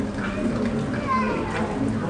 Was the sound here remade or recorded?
recorded